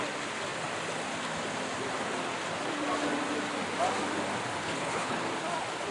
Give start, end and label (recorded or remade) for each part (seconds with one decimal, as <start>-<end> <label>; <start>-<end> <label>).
0.0-4.6 recorded; 4.6-5.2 remade; 5.2-5.9 recorded